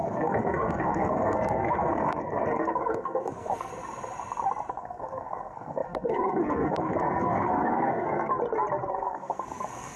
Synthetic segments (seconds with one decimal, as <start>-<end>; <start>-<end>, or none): 0.0-3.7; 4.8-8.3; 8.9-10.0